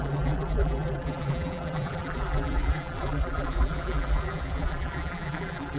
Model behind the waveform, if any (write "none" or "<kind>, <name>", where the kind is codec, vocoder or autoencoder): vocoder, BigVGAN v2